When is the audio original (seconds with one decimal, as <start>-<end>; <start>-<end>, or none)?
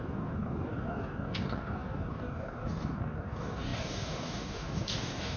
none